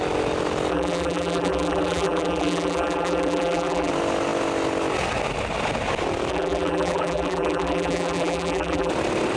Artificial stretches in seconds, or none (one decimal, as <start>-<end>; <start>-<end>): 0.7-3.9; 6.3-8.9